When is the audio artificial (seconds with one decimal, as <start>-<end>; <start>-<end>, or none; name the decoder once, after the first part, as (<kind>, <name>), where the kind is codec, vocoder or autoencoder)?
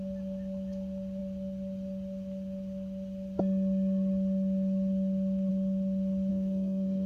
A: 6.3-7.1 (codec, SNAC)